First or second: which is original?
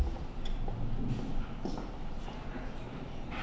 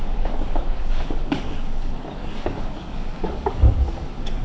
first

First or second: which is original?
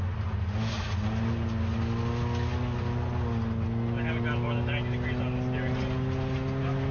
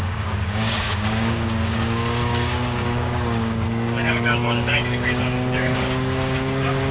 first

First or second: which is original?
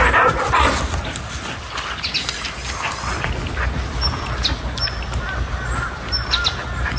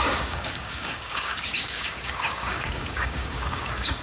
first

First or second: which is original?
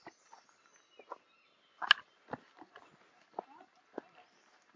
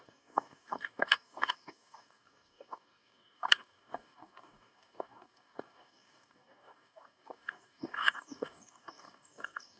first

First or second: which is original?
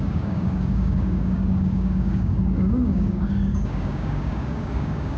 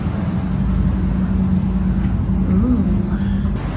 second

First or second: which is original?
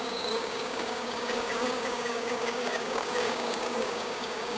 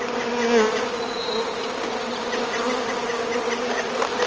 second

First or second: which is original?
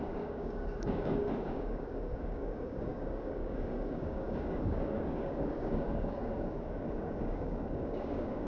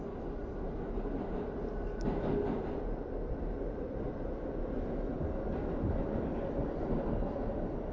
second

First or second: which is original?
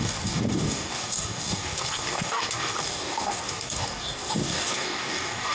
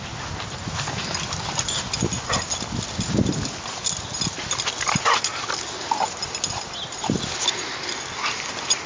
second